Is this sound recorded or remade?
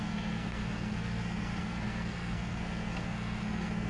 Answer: remade